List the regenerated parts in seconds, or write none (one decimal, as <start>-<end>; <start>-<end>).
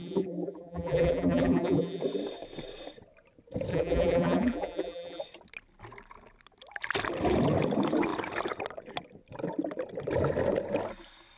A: 0.0-2.0; 3.7-5.2